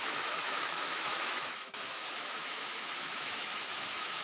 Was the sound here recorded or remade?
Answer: remade